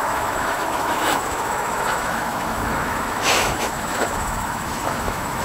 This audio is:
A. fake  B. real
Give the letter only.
A